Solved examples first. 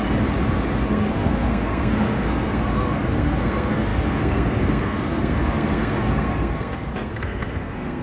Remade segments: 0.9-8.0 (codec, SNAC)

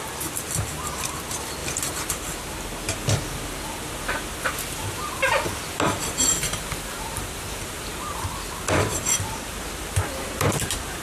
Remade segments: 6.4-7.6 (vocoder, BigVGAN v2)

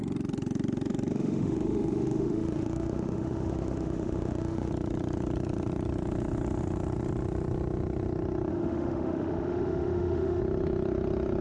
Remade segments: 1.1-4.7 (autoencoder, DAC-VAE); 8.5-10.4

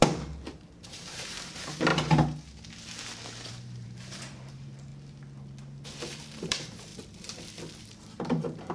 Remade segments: 0.0-1.9 (vocoder, BigVGAN v2); 3.5-4.9; 6.4-6.9; 7.8-8.7

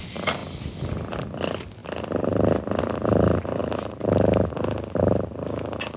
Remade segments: 1.8-2.8 (vocoder, BigVGAN v2)